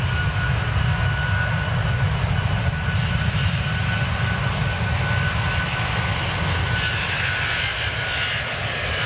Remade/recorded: recorded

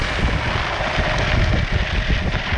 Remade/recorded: recorded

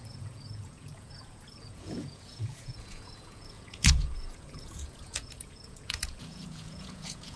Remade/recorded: remade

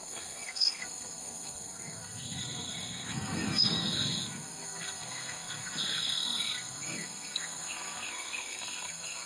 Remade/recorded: remade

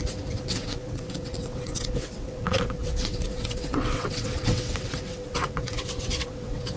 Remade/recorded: remade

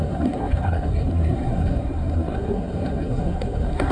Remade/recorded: remade